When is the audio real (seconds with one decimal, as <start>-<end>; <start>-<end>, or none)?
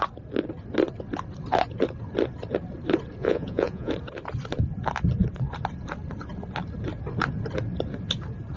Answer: 0.0-3.2; 3.9-8.6